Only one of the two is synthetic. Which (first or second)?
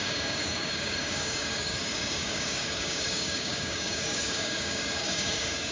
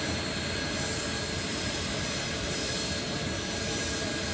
first